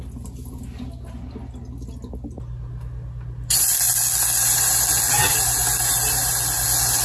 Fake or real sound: real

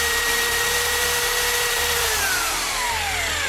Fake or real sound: fake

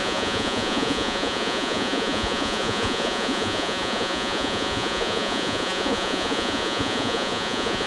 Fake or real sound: fake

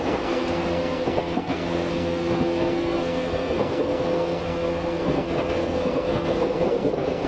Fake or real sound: fake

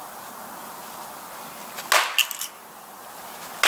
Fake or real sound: real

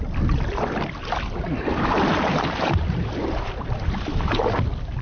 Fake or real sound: real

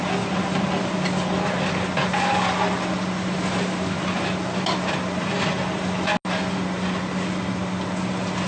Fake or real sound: real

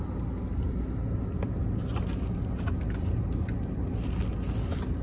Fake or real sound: real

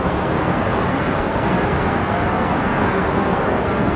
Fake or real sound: fake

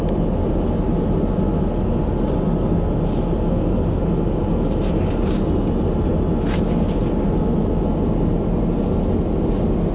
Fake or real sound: real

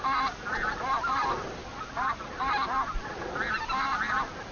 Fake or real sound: real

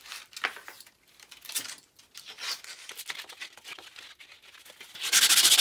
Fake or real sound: real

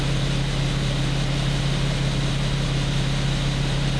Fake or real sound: real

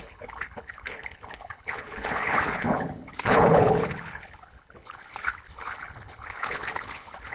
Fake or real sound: fake